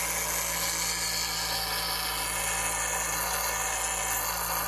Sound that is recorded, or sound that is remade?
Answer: recorded